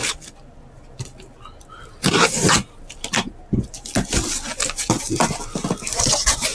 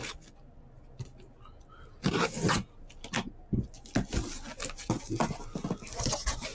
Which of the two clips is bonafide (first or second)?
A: second